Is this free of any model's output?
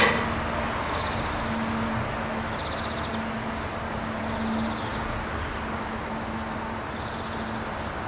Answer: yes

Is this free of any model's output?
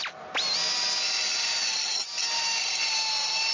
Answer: yes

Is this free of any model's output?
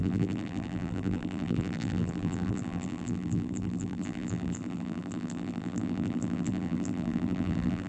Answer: no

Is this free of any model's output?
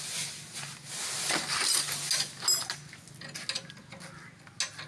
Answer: yes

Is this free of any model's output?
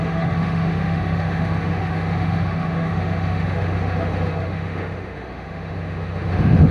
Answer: no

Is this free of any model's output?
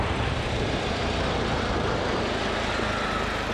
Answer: no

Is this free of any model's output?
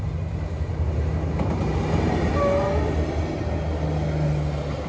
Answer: yes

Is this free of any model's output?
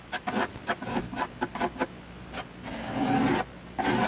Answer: yes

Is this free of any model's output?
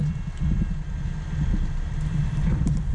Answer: yes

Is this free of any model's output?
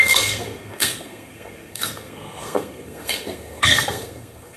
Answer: no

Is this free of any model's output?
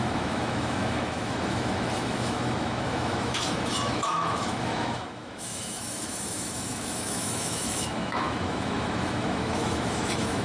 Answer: no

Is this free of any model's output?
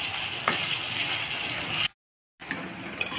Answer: yes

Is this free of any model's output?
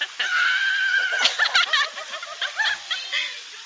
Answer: yes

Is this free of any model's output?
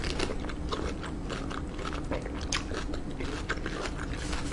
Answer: yes